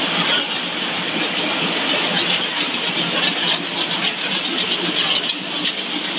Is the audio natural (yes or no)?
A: yes